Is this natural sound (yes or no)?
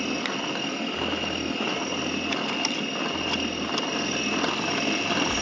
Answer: yes